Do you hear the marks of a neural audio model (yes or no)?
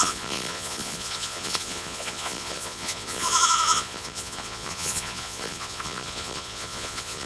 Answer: yes